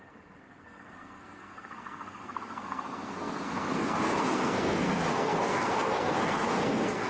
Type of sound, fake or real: fake